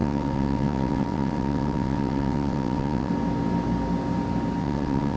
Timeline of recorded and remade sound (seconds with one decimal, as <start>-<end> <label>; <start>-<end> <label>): 0.0-3.1 remade; 3.1-4.6 recorded; 4.6-5.2 remade